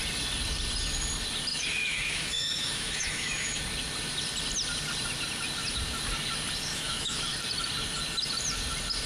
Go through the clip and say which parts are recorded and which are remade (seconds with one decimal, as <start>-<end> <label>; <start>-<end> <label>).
0.0-1.5 recorded; 1.5-3.6 remade; 3.6-6.7 recorded; 6.7-7.2 remade; 7.2-9.1 recorded